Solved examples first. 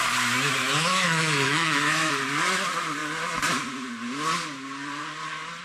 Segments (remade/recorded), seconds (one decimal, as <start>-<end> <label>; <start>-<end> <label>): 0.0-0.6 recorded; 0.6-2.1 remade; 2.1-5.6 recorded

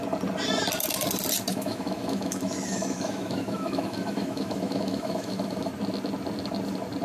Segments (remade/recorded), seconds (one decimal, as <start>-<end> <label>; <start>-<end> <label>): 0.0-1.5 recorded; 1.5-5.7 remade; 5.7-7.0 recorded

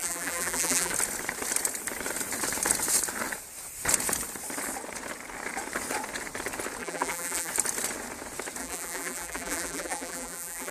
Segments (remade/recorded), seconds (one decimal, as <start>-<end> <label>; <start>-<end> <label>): 0.0-0.9 remade; 0.9-6.8 recorded; 6.8-7.5 remade; 7.5-8.6 recorded; 8.6-10.7 remade

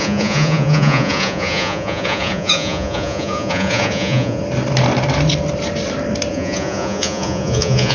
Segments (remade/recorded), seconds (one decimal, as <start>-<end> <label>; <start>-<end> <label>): 0.0-4.4 remade; 4.4-6.3 recorded; 6.3-7.9 remade

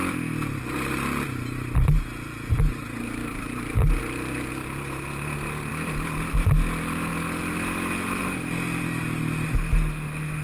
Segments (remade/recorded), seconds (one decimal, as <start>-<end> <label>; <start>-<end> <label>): 0.0-10.4 recorded

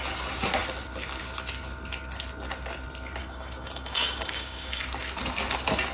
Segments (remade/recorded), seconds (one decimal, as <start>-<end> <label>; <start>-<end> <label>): 0.0-3.2 recorded; 3.2-4.8 remade; 4.8-5.9 recorded

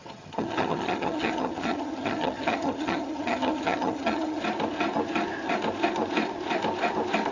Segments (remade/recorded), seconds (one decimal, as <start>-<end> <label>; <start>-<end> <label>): 0.0-4.4 remade; 4.4-7.3 recorded

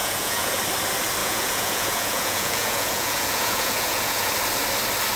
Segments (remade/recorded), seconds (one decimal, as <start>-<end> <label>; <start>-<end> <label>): 0.0-0.6 remade; 0.6-1.2 recorded; 1.2-4.3 remade; 4.3-5.2 recorded